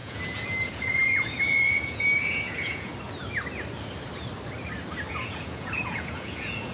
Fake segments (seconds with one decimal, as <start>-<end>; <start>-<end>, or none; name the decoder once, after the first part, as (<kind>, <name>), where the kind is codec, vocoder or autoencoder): 0.0-2.9 (vocoder, Vocos); 5.1-6.7